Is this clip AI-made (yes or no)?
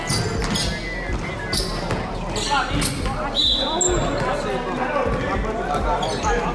no